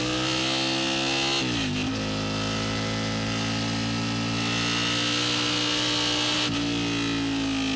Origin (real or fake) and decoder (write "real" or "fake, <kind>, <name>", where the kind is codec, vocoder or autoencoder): real